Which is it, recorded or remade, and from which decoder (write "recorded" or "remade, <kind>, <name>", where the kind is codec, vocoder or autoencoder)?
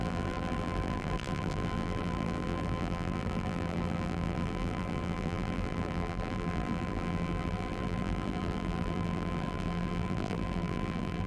remade, vocoder, BigVGAN v2